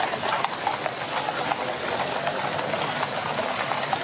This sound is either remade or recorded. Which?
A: recorded